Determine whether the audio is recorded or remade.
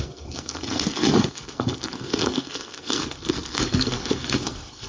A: remade